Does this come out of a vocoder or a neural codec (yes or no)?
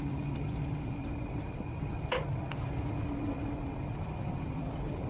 no